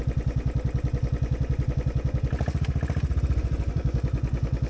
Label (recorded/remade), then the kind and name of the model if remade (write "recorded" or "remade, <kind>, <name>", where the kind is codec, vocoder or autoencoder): recorded